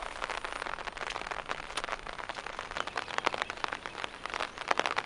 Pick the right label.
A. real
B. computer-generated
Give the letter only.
A